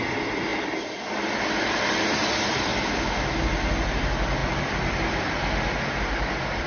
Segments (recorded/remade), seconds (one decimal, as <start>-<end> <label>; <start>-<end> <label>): 0.0-2.7 remade; 2.7-3.9 recorded; 3.9-6.7 remade